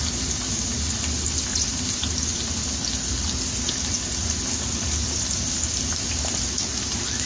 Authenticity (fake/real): real